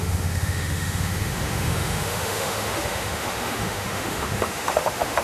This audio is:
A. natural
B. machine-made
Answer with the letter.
B